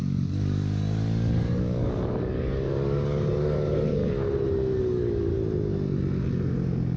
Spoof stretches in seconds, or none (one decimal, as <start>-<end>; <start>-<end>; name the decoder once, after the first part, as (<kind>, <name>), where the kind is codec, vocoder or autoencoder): 0.0-4.0 (codec, DAC); 4.8-5.3